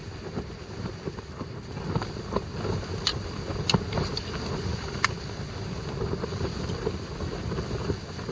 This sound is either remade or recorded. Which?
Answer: recorded